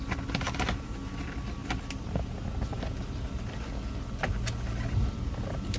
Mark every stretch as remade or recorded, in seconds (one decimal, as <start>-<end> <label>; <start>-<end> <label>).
0.0-5.8 recorded